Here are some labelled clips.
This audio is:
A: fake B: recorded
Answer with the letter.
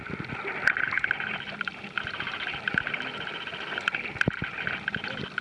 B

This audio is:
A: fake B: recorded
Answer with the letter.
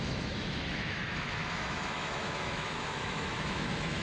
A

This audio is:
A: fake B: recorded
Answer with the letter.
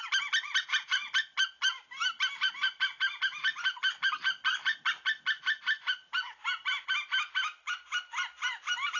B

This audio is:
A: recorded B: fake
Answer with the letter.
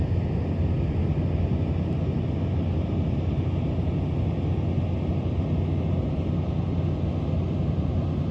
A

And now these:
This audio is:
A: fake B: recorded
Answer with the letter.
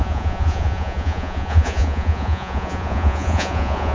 A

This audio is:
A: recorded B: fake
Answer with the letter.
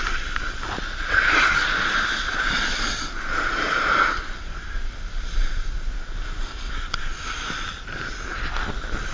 A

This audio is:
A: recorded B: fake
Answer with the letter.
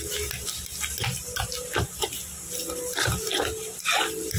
A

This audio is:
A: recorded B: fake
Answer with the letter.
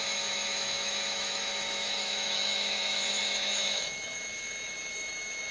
B